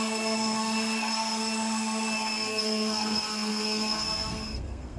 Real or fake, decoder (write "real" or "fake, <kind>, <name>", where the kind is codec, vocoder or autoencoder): fake, codec, SNAC